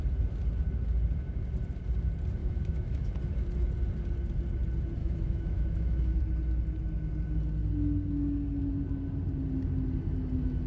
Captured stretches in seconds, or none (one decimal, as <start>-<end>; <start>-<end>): 0.0-2.4; 3.1-5.0; 6.2-10.7